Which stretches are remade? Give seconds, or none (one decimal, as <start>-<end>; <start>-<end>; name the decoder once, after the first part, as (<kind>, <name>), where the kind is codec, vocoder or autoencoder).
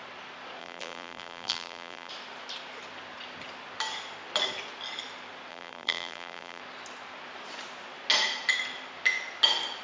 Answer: 0.6-2.1 (vocoder, BigVGAN v2); 5.5-6.6